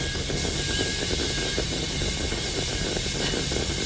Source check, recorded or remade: recorded